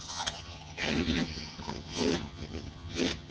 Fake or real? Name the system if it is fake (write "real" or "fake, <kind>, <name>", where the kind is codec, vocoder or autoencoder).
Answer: fake, vocoder, HiFi-GAN